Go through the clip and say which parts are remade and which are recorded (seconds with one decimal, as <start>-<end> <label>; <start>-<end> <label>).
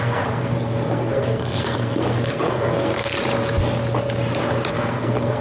0.0-3.1 remade; 3.1-4.7 recorded; 4.7-5.4 remade